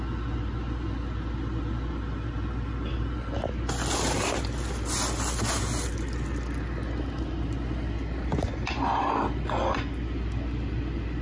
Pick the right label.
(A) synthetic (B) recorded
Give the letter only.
B